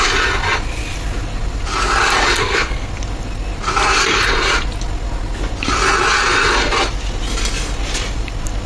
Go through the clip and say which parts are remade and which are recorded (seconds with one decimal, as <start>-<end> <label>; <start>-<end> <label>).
0.0-2.4 recorded; 2.4-2.9 remade; 2.9-8.7 recorded